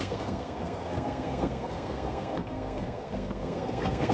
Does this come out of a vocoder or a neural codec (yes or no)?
yes